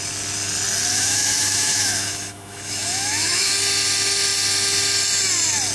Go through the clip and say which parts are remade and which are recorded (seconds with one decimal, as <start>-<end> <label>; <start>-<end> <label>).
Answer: 0.0-0.9 recorded; 0.9-3.5 remade; 3.5-5.7 recorded